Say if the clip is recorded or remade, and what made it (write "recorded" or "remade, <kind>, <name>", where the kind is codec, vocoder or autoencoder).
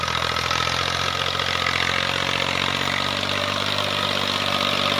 recorded